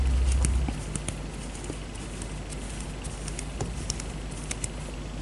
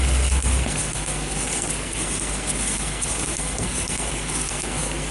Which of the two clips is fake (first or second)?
second